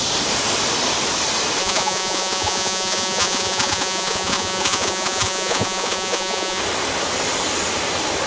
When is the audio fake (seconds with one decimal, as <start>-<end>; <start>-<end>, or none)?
1.6-6.6